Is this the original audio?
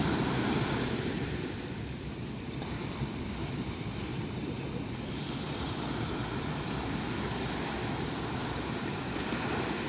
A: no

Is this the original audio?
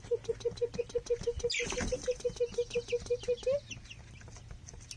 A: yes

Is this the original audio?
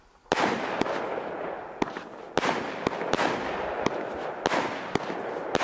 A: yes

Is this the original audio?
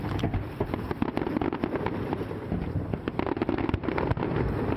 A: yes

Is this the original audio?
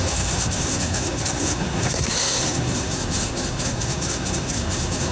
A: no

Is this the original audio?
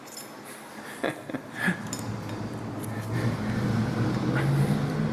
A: yes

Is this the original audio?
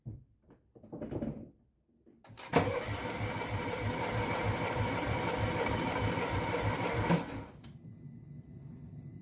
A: no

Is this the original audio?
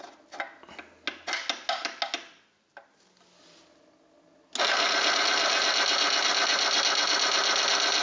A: yes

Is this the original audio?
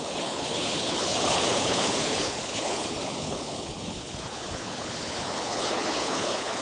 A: no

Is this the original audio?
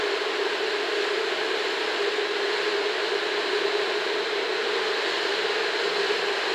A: yes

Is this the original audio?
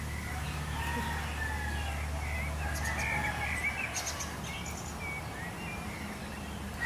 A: yes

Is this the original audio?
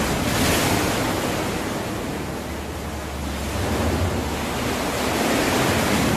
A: yes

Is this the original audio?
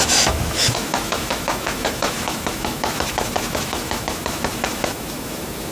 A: no